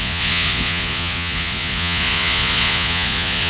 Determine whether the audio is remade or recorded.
remade